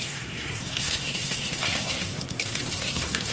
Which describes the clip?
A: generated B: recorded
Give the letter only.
A